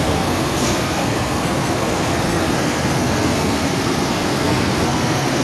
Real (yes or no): no